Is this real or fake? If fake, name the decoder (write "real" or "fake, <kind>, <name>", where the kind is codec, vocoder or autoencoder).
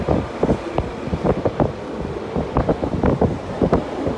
real